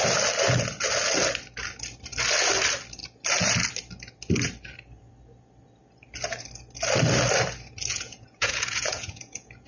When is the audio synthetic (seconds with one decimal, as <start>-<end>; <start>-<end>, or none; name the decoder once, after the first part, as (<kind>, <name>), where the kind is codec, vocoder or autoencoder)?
7.9-9.7 (vocoder, Vocos)